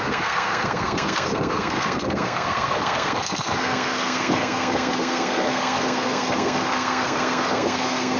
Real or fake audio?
fake